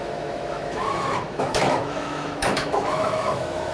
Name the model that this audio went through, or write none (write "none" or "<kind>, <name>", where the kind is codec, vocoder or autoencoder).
autoencoder, DAC-VAE